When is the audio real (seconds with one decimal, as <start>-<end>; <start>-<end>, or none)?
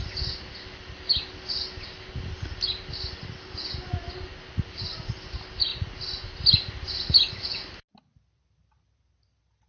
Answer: 0.0-9.7